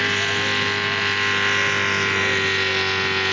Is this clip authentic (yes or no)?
yes